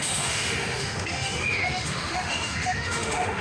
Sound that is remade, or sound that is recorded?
remade